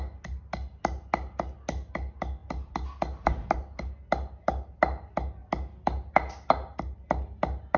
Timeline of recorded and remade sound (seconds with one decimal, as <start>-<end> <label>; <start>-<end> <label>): 0.0-7.8 recorded